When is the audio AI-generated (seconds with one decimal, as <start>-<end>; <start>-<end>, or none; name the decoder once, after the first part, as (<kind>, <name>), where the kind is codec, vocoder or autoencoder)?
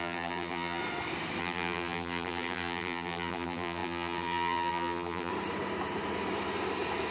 0.0-0.8 (vocoder, BigVGAN v2); 1.4-5.3